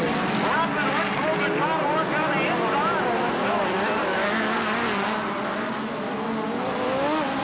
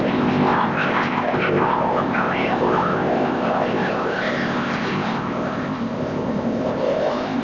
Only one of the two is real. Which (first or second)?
first